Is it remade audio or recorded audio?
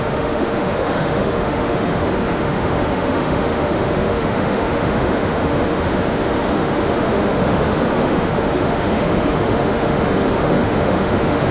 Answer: remade